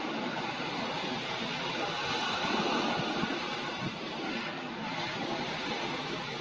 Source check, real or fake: real